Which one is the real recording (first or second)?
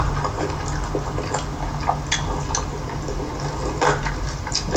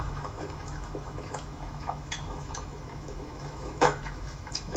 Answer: first